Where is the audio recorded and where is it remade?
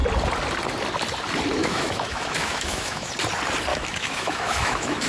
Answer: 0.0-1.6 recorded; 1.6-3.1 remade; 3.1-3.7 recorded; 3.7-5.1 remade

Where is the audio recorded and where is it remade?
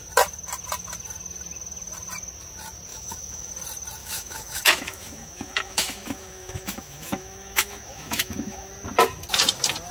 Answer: 0.0-2.9 recorded; 2.9-3.5 remade; 3.5-4.0 recorded; 4.0-8.7 remade; 8.7-9.9 recorded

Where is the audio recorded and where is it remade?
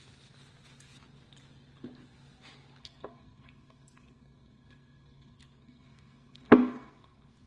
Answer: 0.0-2.8 recorded; 2.8-7.5 remade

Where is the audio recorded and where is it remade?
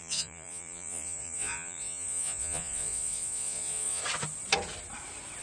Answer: 0.0-4.0 remade; 4.0-5.4 recorded